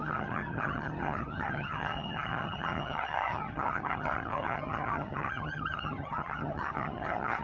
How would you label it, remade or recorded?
remade